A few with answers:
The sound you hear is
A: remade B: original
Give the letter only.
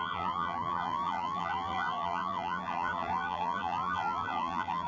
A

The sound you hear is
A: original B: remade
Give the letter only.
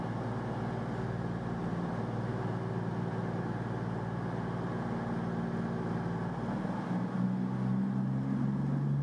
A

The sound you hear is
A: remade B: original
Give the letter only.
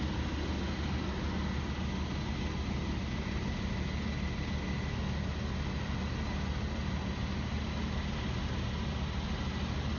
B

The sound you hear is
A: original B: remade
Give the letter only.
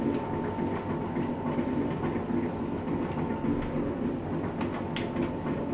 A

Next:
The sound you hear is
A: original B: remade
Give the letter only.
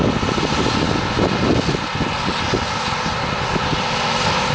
A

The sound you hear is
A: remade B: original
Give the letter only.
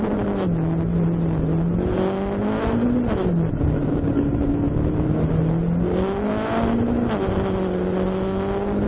B